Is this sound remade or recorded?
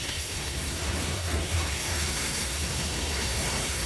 remade